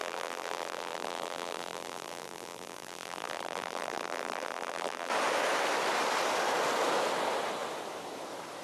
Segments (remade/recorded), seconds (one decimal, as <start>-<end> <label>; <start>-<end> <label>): 0.0-5.1 remade; 5.1-8.6 recorded